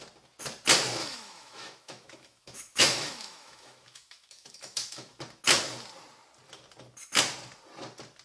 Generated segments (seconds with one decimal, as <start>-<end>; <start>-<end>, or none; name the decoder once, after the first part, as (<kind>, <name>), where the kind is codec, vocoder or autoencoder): 1.0-5.2 (autoencoder, DAC-VAE)